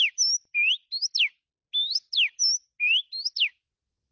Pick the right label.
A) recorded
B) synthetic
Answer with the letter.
A